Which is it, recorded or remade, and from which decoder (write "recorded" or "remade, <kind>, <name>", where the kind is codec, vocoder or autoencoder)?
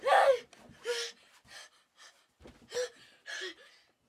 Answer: recorded